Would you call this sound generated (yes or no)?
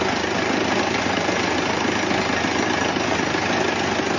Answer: no